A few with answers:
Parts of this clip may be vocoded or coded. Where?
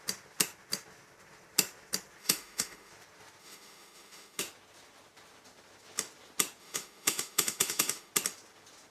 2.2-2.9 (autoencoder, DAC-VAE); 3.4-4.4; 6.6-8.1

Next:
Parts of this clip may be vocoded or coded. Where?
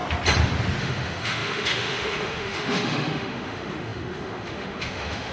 0.8-5.3 (autoencoder, DAC-VAE)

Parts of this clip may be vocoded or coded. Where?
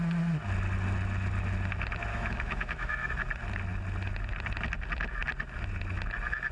2.1-3.1 (autoencoder, DAC-VAE)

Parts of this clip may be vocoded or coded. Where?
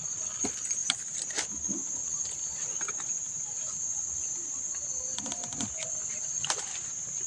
none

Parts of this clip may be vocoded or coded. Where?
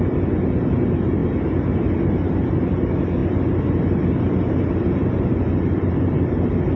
none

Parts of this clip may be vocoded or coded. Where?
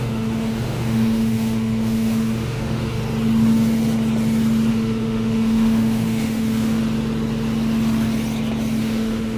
0.0-3.0 (autoencoder, DAC-VAE); 4.7-6.8; 8.8-9.4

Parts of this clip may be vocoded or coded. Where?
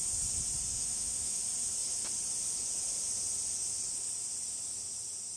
0.7-1.4 (autoencoder, DAC-VAE)